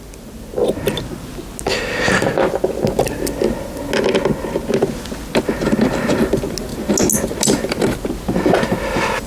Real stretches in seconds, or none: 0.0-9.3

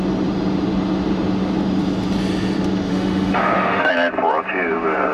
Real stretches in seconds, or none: 0.0-2.9; 3.9-5.1

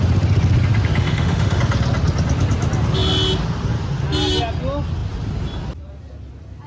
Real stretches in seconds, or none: 0.0-1.0; 1.6-6.7

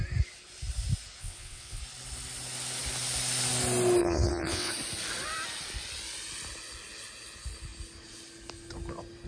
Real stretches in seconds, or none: 0.0-1.2; 1.8-4.0; 4.7-9.3